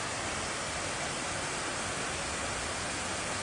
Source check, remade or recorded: recorded